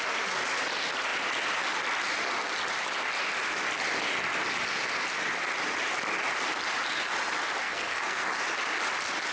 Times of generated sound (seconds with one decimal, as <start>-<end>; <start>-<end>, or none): 7.6-8.3